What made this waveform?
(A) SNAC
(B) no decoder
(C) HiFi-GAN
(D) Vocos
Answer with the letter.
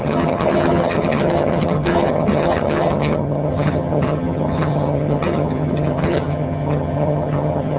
C